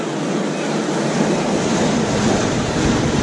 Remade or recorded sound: recorded